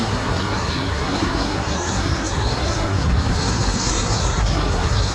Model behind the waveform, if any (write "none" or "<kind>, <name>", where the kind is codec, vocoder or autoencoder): codec, SNAC